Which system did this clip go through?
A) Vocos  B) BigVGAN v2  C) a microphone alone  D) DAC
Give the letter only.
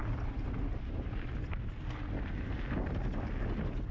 C